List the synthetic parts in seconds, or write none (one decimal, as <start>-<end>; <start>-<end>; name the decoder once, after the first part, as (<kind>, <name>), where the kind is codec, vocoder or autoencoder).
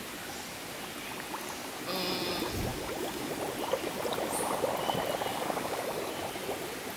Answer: 2.7-3.3 (codec, DAC); 5.3-6.0